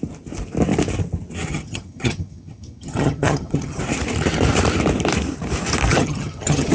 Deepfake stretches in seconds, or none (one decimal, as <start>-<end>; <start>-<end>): 1.5-3.8; 5.9-6.7